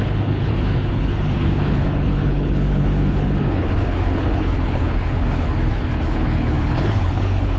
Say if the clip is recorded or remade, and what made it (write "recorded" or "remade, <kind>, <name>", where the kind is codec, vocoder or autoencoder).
remade, codec, HILCodec